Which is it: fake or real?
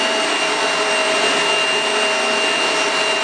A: real